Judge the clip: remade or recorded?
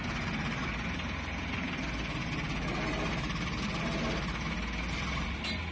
recorded